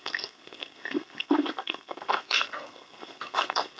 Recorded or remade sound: remade